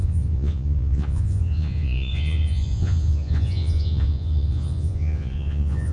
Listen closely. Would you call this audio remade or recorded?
remade